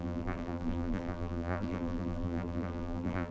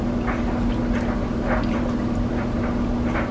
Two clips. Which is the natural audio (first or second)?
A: second